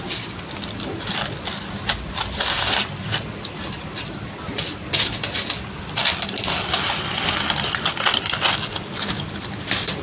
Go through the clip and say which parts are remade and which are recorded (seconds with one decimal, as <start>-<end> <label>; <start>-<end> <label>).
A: 0.0-10.0 recorded